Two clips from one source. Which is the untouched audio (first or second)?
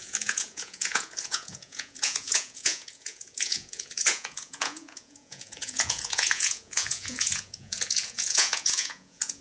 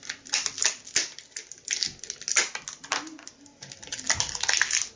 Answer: second